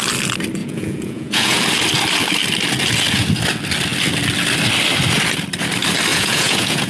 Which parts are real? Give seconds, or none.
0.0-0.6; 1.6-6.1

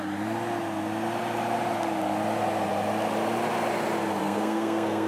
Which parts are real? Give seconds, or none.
0.0-4.2

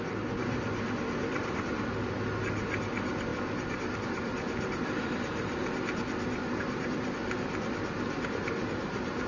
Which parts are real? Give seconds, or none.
0.0-9.3

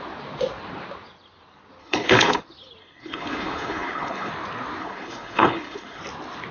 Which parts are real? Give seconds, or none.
0.0-1.8; 2.4-2.8; 4.3-4.8; 6.0-6.5

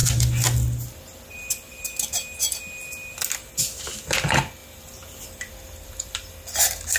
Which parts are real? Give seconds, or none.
0.0-4.6; 6.3-7.0

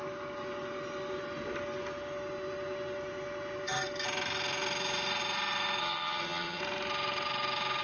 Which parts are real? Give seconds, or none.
0.0-5.8; 6.6-7.8

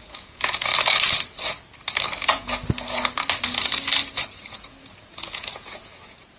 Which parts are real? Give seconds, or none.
0.7-4.5

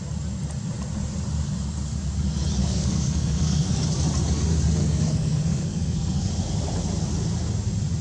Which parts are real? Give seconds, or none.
0.0-2.6; 3.7-4.8; 6.3-8.0